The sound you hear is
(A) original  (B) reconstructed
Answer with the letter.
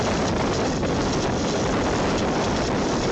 A